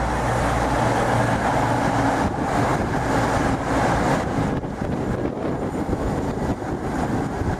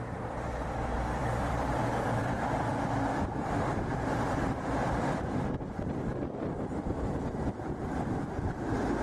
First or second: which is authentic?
first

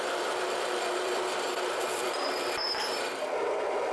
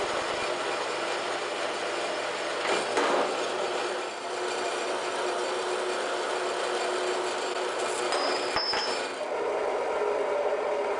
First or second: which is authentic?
second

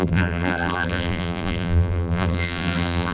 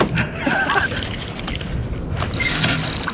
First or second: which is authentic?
second